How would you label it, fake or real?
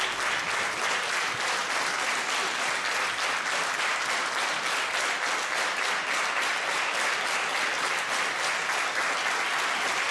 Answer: real